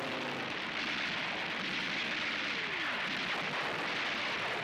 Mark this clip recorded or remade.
recorded